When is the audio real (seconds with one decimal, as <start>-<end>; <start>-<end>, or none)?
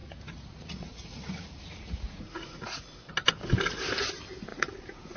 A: 3.1-4.5